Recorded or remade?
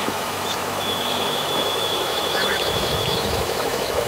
remade